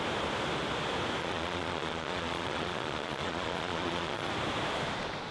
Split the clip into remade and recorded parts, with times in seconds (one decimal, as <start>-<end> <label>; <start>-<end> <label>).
0.0-1.2 recorded; 1.2-4.3 remade; 4.3-5.3 recorded